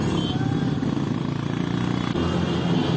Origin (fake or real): real